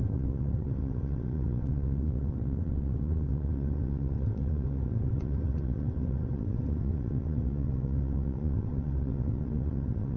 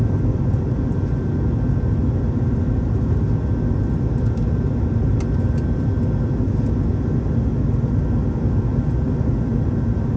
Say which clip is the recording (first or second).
second